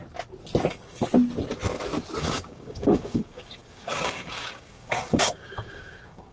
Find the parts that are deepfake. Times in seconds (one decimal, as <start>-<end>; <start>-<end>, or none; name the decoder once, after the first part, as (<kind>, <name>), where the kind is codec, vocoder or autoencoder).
0.7-1.1 (codec, DAC); 2.2-6.3